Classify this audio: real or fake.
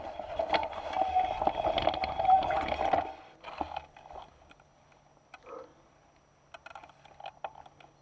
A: real